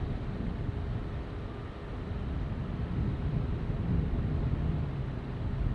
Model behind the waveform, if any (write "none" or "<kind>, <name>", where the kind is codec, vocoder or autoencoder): none